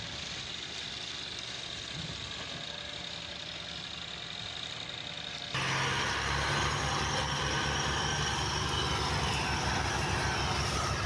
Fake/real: real